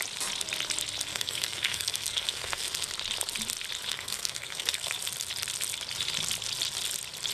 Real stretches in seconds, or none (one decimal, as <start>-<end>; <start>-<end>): 0.0-1.1; 2.9-3.9; 4.9-7.3

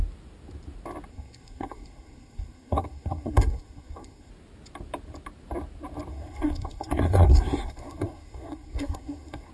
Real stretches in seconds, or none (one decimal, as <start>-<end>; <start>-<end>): 0.0-1.1; 4.3-6.1

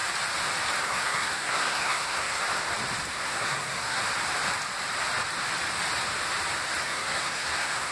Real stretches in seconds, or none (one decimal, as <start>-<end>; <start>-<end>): 0.0-0.8; 2.4-3.1; 4.0-6.8

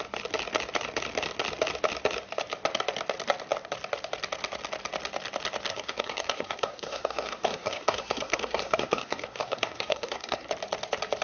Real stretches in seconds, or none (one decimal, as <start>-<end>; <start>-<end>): 0.0-5.7; 10.5-11.2

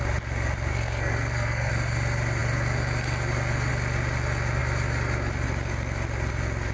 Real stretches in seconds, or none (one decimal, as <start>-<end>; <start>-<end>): 0.0-0.7; 1.7-6.7

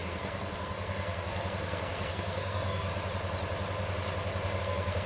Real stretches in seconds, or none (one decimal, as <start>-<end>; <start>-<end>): 2.9-4.6

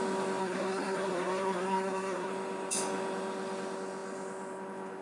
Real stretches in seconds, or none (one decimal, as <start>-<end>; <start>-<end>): 0.0-0.4; 2.3-5.0

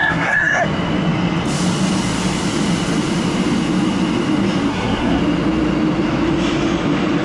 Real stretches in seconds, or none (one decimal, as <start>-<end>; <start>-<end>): 0.6-4.7; 5.2-7.2